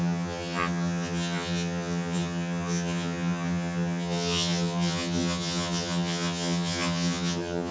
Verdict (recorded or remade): remade